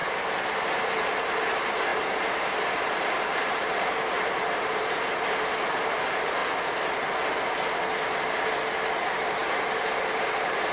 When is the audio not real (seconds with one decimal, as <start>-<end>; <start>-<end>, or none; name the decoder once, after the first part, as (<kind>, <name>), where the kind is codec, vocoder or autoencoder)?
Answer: 0.6-6.4 (vocoder, BigVGAN v2); 8.9-10.7